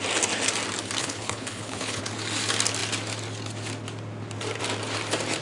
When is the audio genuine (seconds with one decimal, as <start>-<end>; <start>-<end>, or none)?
0.0-1.0; 2.0-5.4